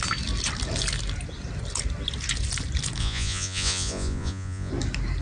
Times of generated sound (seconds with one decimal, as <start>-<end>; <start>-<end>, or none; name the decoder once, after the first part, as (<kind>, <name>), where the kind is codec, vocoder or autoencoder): 3.0-4.7 (vocoder, Vocos)